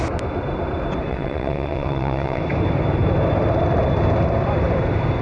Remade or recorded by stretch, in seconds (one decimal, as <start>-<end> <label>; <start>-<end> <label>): 0.0-1.1 recorded; 1.1-2.4 remade; 2.4-5.2 recorded